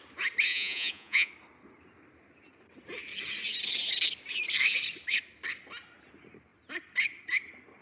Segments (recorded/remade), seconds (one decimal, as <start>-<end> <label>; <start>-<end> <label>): 0.0-0.5 recorded; 0.5-1.3 remade; 1.3-7.8 recorded